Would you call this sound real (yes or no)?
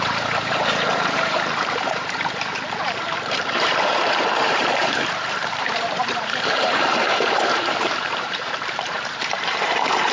no